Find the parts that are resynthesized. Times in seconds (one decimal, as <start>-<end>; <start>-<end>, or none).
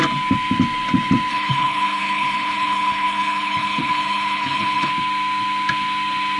1.3-4.9